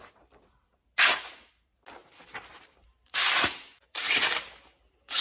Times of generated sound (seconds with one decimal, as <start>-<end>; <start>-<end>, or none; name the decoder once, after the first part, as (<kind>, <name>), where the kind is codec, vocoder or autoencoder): 2.0-4.0 (vocoder, BigVGAN v2)